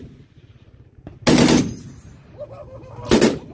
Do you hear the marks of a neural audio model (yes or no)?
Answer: no